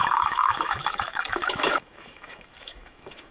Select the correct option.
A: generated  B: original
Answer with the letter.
A